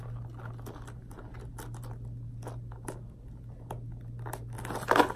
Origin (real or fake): real